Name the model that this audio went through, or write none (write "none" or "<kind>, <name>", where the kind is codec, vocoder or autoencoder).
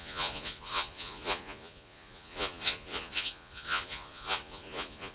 vocoder, Vocos